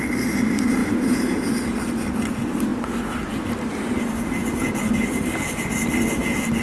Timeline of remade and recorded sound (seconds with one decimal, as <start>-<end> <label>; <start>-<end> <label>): 0.0-0.8 recorded; 0.8-1.5 remade; 1.5-6.6 recorded